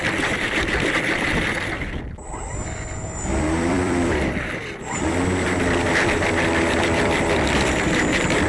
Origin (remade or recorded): remade